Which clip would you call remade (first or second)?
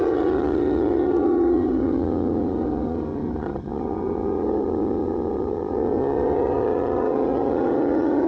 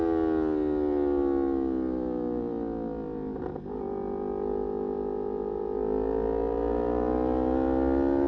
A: first